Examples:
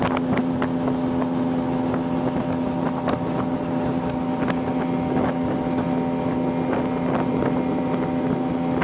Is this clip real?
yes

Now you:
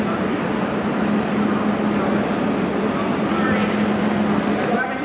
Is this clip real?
yes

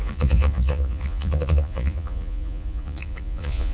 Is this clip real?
no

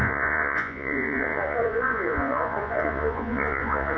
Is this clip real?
no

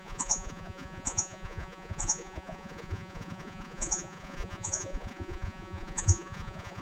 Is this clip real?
no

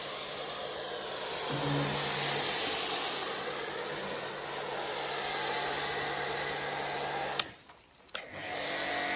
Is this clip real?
yes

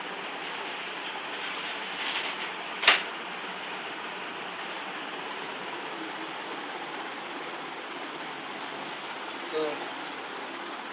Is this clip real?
yes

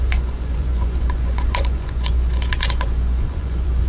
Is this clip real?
no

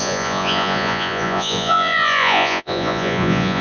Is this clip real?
no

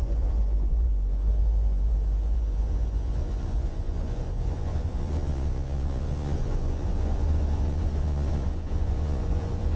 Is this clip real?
no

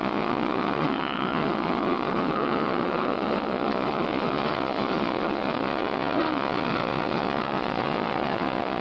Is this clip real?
no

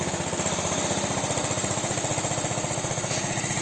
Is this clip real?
yes